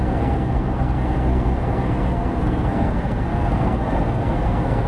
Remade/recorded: remade